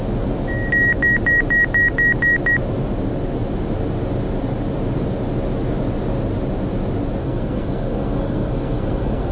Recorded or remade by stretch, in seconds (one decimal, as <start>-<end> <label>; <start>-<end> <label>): 0.0-7.2 recorded; 7.2-9.3 remade